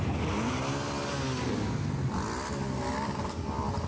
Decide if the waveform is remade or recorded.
recorded